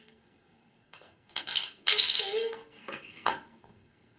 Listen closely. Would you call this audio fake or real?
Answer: fake